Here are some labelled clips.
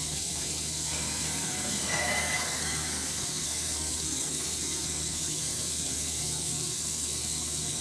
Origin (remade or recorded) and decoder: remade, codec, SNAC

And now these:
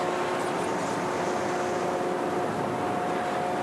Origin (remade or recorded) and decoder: recorded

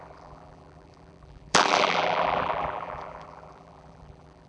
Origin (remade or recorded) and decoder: remade, vocoder, BigVGAN v2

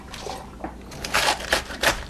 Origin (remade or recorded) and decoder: recorded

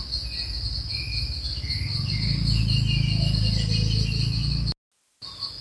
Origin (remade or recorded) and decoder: recorded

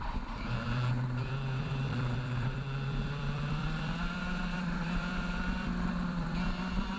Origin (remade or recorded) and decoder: remade, vocoder, BigVGAN v2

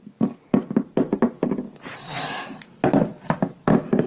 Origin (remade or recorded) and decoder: recorded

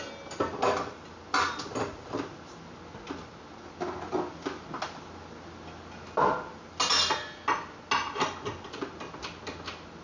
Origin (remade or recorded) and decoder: recorded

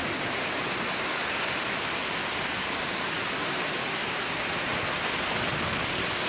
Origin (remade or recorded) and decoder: remade, vocoder, BigVGAN v2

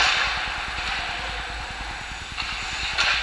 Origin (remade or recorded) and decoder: recorded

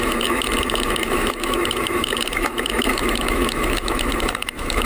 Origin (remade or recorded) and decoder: remade, autoencoder, DAC-VAE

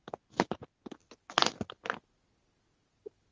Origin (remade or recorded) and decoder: recorded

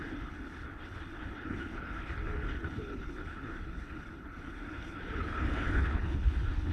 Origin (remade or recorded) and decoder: remade, codec, HILCodec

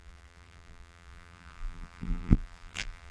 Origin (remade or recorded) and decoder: remade, vocoder, BigVGAN v2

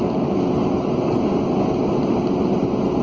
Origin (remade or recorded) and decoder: recorded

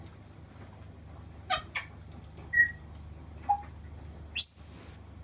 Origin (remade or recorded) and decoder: recorded